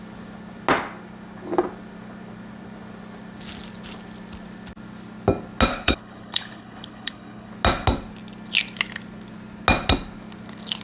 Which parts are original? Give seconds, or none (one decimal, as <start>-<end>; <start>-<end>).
0.0-5.7; 7.5-10.8